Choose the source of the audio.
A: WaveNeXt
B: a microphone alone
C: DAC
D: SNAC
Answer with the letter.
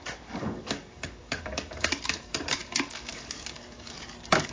C